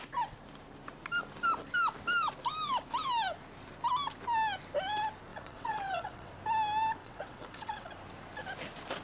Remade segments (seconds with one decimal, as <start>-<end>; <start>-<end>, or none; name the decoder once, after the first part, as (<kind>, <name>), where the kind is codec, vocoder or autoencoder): 5.3-6.3 (vocoder, WaveNeXt); 7.0-7.9